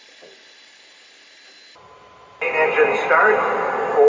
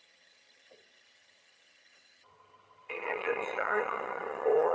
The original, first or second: first